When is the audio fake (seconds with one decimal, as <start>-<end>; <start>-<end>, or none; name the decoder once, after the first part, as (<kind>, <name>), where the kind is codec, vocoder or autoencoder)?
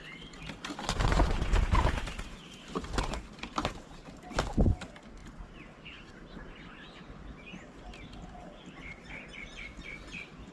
none